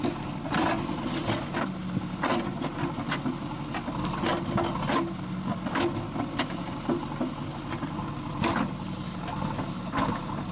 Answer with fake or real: real